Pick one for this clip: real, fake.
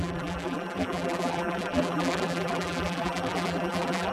fake